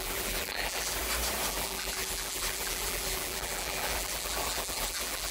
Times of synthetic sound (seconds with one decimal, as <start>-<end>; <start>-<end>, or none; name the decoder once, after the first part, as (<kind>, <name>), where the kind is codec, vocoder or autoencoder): 0.0-1.0 (vocoder, BigVGAN v2); 1.5-5.3